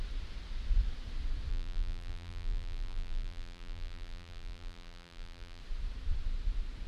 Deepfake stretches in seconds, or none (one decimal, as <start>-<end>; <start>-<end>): 1.5-5.6